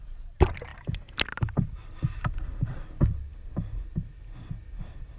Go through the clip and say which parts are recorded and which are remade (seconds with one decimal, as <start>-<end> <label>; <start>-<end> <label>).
0.0-5.2 recorded

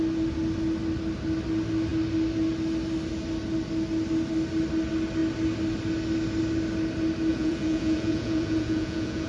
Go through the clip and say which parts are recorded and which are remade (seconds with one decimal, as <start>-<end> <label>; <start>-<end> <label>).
0.0-7.3 recorded; 7.3-9.3 remade